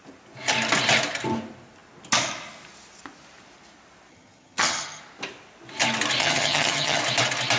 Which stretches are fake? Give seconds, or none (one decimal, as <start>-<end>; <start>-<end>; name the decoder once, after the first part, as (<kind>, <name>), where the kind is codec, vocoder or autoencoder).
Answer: 4.1-5.0 (vocoder, HiFi-GAN); 6.2-7.0